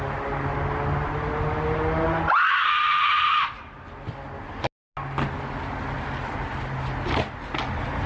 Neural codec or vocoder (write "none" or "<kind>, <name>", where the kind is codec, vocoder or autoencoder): none